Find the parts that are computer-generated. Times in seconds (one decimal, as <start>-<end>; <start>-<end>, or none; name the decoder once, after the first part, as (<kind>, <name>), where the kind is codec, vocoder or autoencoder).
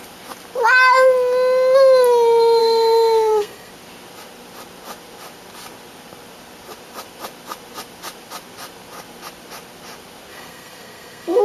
2.6-3.7 (codec, SNAC); 10.3-11.4